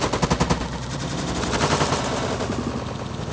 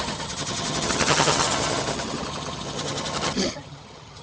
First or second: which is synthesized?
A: second